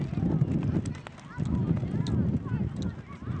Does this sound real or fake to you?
real